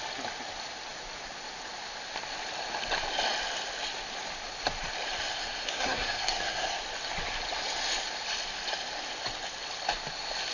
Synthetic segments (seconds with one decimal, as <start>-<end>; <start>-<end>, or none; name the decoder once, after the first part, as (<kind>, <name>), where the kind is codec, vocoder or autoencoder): 5.3-6.8 (codec, SNAC)